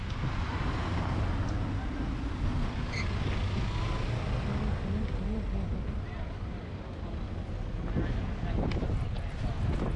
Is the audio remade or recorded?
recorded